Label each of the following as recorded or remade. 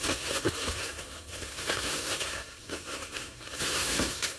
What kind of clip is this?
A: remade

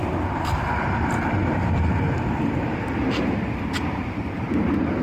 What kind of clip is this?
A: remade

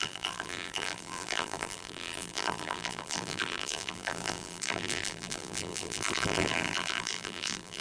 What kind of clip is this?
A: remade